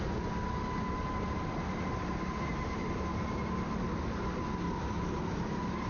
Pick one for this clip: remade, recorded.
recorded